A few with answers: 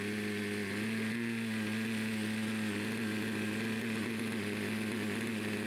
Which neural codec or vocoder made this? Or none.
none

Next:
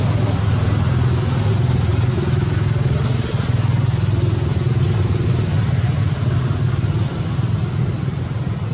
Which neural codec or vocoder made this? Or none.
none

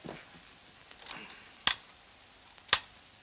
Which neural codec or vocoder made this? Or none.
none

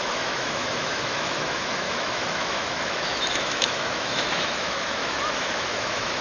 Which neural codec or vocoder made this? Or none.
autoencoder, DAC-VAE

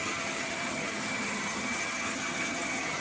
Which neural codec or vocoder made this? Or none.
vocoder, HiFi-GAN